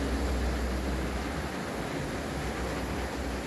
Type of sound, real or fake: real